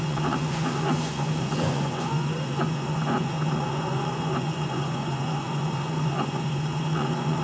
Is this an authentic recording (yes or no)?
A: no